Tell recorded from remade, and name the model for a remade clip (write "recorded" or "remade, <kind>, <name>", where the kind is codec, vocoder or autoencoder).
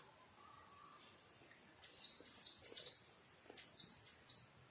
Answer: recorded